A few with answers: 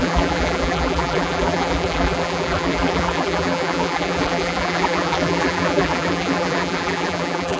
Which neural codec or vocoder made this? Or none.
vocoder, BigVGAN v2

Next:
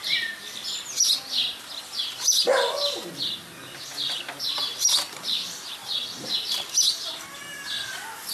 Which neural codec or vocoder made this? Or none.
none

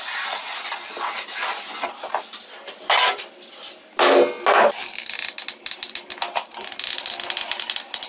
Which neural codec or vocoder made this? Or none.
none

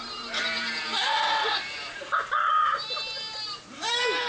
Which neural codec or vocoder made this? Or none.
vocoder, BigVGAN v2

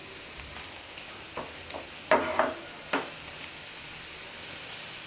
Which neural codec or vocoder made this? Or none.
none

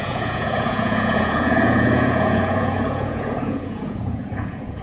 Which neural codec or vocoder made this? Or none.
vocoder, Vocos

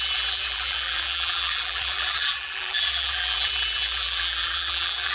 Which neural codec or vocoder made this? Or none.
vocoder, BigVGAN v2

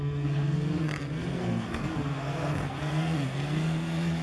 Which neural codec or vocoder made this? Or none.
codec, SNAC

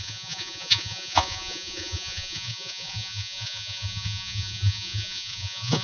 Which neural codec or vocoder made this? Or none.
vocoder, Vocos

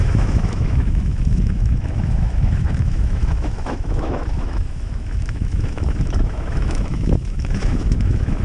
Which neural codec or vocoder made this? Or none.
autoencoder, DAC-VAE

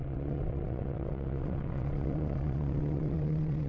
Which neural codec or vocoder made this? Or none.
vocoder, WaveNeXt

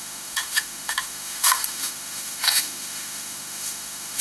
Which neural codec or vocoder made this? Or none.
autoencoder, DAC-VAE